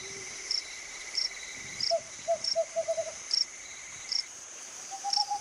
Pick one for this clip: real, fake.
fake